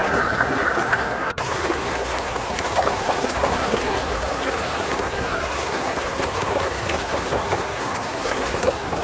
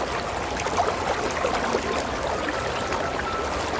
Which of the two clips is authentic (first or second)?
second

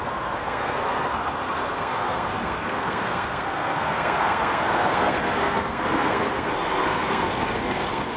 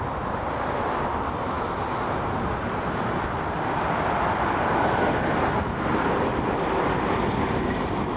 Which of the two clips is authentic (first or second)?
second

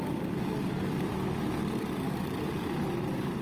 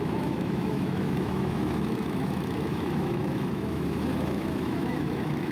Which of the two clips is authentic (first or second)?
first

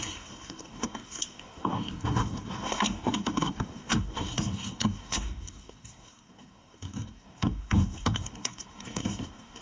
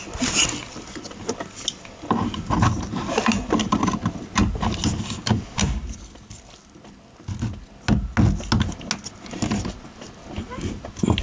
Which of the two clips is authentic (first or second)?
second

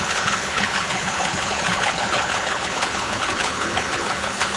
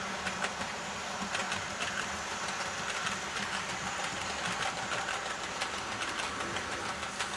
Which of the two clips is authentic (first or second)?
second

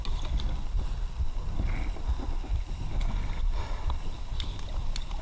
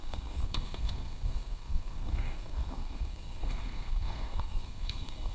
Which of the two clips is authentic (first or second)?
first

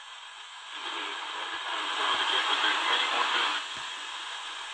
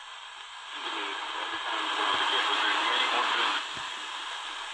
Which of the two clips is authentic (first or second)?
second